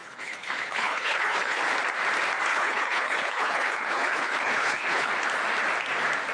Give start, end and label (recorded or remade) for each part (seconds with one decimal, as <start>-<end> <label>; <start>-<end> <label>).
0.0-1.6 remade; 1.6-2.5 recorded; 2.5-5.1 remade; 5.1-6.3 recorded